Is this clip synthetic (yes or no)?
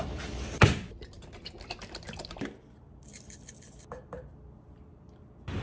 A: no